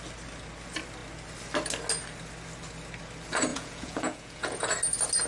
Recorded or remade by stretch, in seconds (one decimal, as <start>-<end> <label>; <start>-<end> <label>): 0.0-3.5 recorded; 3.5-4.7 remade; 4.7-5.3 recorded